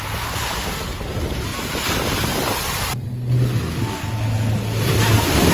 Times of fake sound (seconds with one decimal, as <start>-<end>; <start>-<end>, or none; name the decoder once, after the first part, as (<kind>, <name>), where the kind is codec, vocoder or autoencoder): none